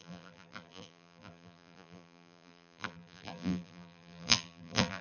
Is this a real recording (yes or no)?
no